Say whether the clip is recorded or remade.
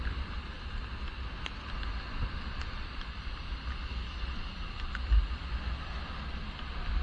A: recorded